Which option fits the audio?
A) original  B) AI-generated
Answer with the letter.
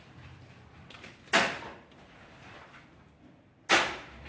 A